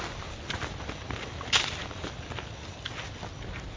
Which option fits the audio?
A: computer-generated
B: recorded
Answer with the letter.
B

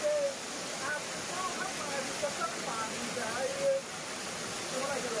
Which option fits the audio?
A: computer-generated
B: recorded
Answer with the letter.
B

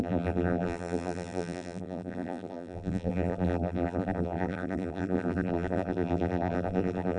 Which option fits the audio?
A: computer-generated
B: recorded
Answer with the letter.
A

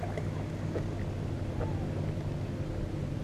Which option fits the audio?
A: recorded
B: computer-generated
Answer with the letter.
A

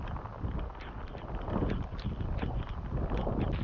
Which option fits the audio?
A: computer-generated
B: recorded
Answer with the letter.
B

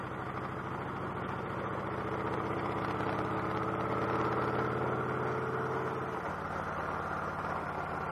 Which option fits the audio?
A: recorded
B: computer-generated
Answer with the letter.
A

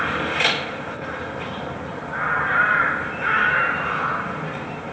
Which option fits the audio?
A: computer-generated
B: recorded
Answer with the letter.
A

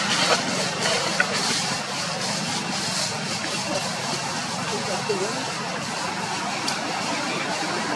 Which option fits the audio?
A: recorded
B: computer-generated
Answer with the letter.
B